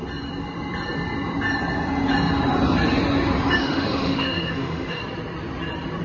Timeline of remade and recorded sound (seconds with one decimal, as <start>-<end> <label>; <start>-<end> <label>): 0.0-3.6 recorded; 3.6-5.0 remade; 5.0-6.0 recorded